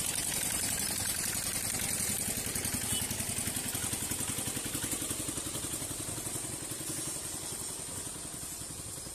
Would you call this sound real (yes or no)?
yes